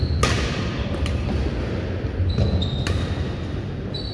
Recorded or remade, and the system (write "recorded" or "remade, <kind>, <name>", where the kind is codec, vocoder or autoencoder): recorded